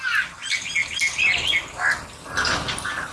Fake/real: real